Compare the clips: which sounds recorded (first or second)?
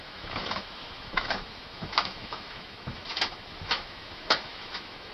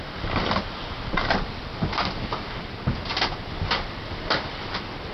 second